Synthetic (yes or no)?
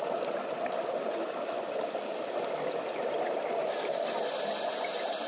no